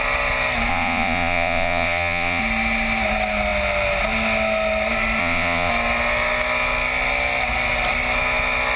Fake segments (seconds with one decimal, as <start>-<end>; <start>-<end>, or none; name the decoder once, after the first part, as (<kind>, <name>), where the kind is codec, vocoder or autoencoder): 0.7-2.4 (vocoder, Vocos); 5.2-5.7